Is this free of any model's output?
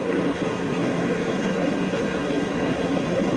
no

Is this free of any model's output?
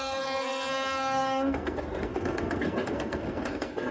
no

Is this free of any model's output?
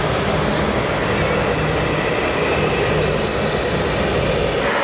yes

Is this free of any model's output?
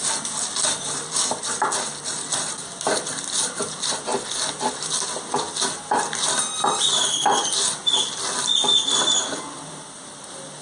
yes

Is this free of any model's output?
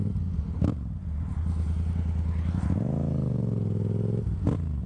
yes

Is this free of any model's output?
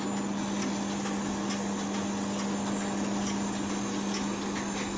yes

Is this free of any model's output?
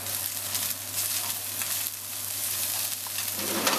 yes